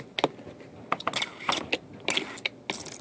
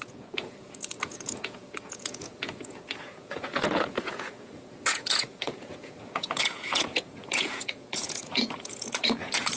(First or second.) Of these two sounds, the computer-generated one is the second